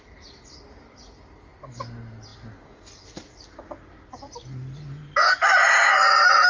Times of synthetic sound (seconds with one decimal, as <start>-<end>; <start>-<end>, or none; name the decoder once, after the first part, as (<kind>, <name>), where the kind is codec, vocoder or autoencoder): none